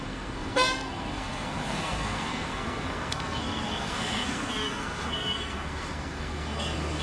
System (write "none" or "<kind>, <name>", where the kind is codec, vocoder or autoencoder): codec, SNAC